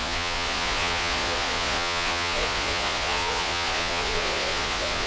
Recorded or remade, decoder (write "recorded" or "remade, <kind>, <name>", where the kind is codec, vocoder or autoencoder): remade, vocoder, Vocos